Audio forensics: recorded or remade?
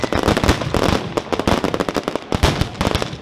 recorded